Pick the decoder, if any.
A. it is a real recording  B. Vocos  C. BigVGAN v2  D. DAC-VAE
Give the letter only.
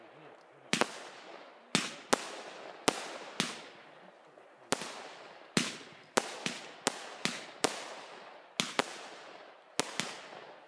A